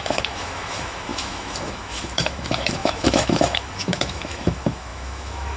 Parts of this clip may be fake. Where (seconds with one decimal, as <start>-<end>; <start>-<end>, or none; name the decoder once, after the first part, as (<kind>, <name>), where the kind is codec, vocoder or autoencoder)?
0.0-5.6 (autoencoder, DAC-VAE)